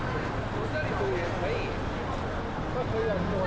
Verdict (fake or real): real